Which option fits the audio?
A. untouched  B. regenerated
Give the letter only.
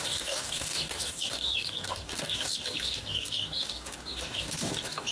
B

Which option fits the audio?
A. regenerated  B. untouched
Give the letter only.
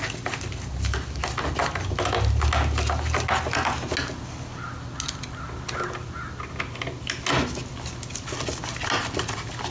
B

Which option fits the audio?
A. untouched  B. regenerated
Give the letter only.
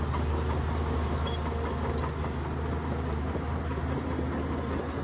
A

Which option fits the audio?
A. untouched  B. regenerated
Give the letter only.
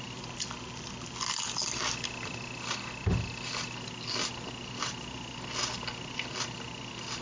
A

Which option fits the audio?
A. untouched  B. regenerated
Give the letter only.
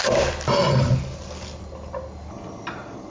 A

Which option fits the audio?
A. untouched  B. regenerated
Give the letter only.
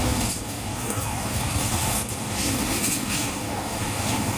B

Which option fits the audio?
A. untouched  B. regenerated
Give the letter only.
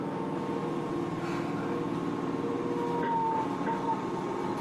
A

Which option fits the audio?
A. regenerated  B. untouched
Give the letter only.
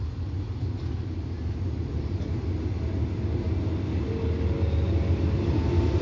B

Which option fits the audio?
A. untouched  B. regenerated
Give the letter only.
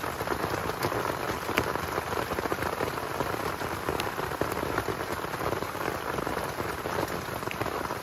A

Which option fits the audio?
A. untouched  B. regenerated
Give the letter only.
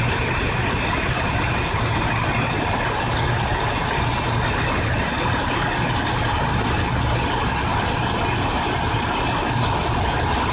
A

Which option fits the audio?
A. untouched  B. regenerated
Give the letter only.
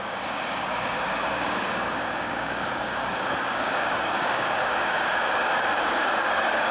B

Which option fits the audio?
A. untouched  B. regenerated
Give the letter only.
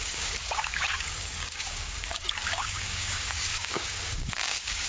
B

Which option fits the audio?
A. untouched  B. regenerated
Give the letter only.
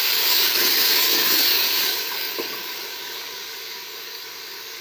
B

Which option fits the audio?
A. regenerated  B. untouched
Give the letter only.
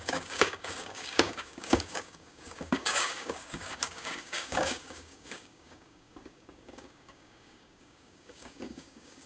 A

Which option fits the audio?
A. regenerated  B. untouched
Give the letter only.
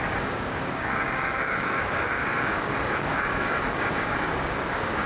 A